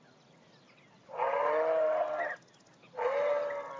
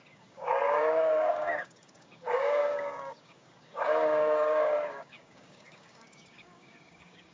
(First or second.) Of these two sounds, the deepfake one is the second